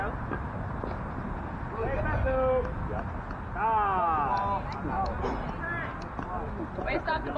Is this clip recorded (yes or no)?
yes